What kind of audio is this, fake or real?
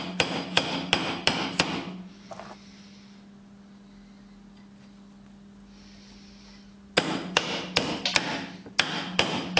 real